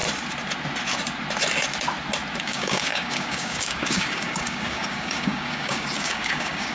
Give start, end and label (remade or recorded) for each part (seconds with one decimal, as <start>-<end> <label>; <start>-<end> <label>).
0.0-2.4 recorded; 2.4-6.7 remade